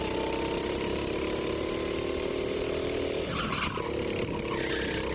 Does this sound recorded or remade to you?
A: recorded